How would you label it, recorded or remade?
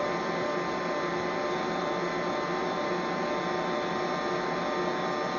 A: recorded